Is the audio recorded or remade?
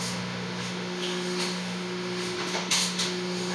remade